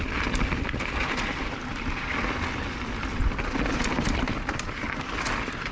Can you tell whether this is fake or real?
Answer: real